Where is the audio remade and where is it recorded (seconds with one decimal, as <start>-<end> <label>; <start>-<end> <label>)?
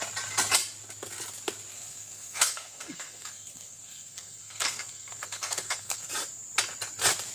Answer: 0.0-1.7 recorded; 1.7-6.1 remade; 6.1-7.3 recorded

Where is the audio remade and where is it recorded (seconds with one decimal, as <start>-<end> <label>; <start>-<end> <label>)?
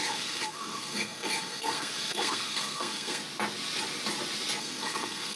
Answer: 0.0-3.2 remade; 3.2-4.6 recorded; 4.6-5.4 remade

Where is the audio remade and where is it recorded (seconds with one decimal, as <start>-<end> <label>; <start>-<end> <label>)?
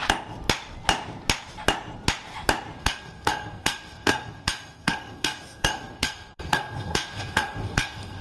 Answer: 0.0-2.8 recorded; 2.8-8.2 remade